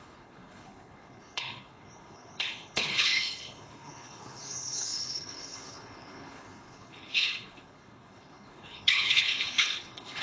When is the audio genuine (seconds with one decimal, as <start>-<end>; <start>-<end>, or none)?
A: none